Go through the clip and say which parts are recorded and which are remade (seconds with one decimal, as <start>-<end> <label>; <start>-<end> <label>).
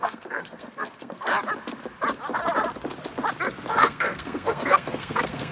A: 0.0-1.3 remade; 1.3-3.7 recorded; 3.7-5.5 remade